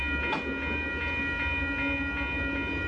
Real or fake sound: real